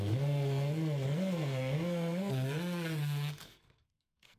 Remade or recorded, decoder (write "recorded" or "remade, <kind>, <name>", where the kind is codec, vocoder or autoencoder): remade, codec, SNAC